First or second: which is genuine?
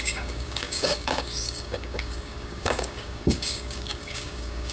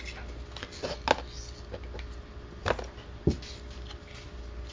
second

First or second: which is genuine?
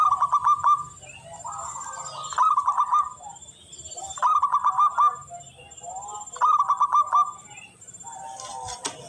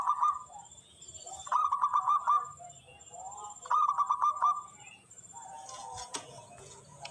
first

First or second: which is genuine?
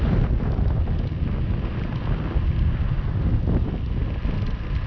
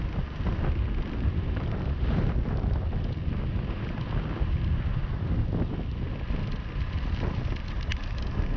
first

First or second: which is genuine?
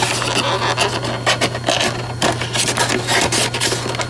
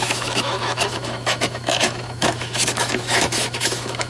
first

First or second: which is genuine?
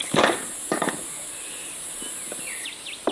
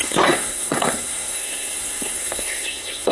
first